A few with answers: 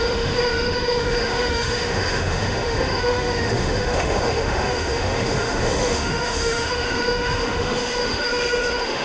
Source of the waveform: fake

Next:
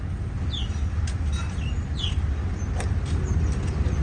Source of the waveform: real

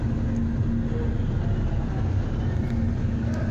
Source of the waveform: real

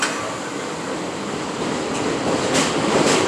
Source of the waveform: real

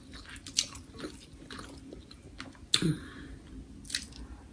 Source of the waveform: real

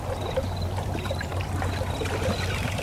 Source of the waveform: real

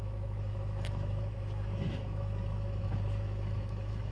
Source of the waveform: fake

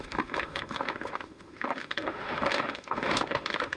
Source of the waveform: fake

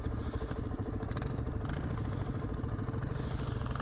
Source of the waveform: real